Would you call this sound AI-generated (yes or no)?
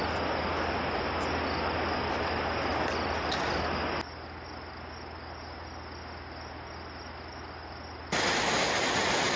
no